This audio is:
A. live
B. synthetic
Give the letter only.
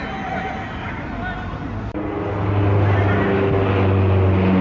A